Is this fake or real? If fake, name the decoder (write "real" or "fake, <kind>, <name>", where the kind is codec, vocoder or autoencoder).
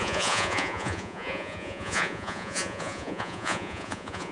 fake, vocoder, Vocos